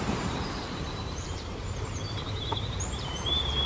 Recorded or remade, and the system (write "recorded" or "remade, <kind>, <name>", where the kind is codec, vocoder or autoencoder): remade, vocoder, BigVGAN v2